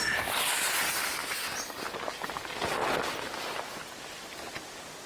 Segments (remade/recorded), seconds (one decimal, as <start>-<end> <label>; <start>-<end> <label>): 0.0-5.1 recorded